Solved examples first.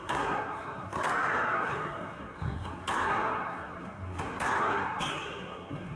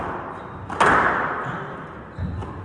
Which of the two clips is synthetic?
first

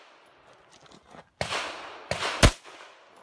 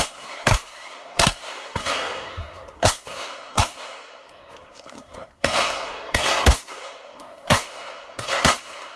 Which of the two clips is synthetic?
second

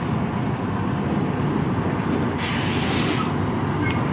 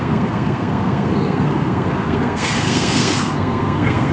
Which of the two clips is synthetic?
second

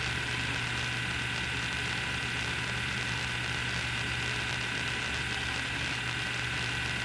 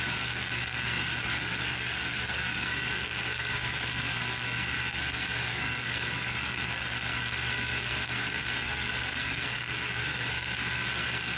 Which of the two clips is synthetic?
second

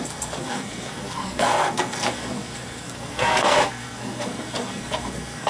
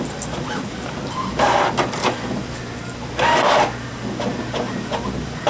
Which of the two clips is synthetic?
first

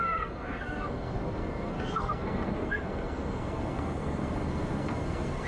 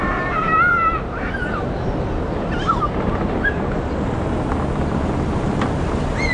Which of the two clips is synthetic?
first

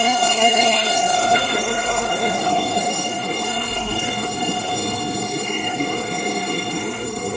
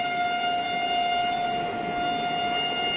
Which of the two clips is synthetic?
first